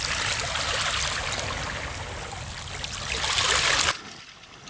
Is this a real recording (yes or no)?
yes